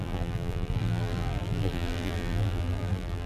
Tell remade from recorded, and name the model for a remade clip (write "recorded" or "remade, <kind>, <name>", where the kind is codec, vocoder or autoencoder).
remade, vocoder, BigVGAN v2